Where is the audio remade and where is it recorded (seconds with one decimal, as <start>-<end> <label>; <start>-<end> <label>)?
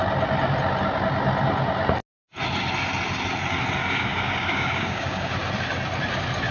0.0-3.8 recorded; 3.8-5.3 remade; 5.3-6.5 recorded